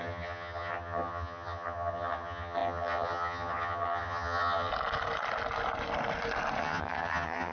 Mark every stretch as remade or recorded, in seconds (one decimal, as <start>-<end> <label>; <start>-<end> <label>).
0.0-4.7 remade; 4.7-6.6 recorded; 6.6-7.5 remade